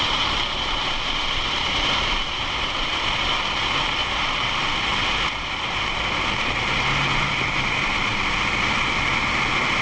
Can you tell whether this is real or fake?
fake